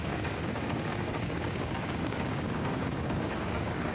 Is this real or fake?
fake